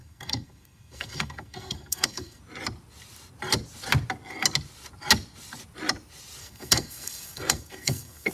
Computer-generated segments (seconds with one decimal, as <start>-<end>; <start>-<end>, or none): 0.0-2.4; 6.4-8.3